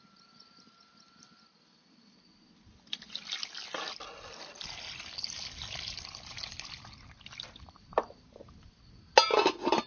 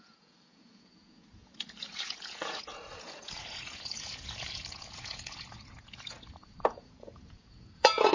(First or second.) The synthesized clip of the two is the second